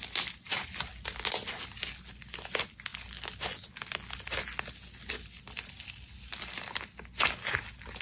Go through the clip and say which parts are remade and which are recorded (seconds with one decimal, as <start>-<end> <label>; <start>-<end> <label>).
0.0-8.0 recorded